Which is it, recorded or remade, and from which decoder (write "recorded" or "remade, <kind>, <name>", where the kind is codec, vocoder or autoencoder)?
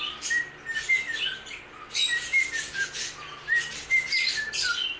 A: recorded